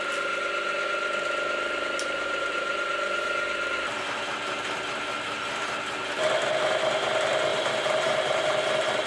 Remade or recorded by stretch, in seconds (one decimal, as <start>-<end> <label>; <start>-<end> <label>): 0.0-7.5 recorded; 7.5-9.1 remade

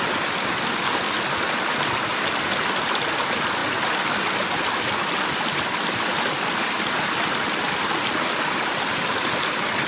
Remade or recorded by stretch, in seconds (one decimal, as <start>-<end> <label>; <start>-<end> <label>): 0.0-9.9 recorded

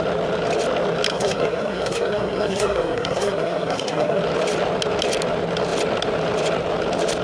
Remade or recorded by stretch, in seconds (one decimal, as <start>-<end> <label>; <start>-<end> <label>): 0.0-1.1 recorded; 1.1-4.2 remade; 4.2-7.2 recorded

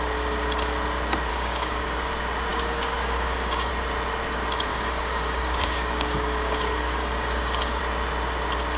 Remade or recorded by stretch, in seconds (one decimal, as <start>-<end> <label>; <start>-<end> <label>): 0.0-1.3 recorded; 1.3-2.1 remade; 2.1-2.5 recorded; 2.5-3.7 remade; 3.7-4.7 recorded; 4.7-7.8 remade; 7.8-8.8 recorded

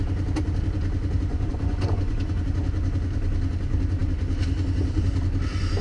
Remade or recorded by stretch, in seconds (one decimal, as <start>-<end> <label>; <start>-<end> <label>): 0.0-1.3 recorded; 1.3-2.4 remade; 2.4-5.8 recorded